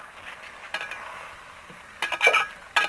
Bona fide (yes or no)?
yes